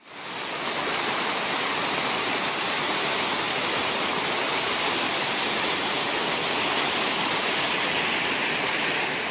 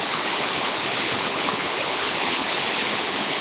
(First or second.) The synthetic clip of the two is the second